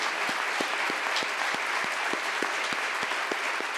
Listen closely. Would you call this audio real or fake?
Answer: real